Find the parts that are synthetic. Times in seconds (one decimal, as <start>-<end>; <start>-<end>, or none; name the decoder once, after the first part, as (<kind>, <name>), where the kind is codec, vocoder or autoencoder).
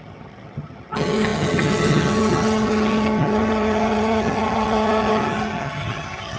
0.0-6.4 (vocoder, HiFi-GAN)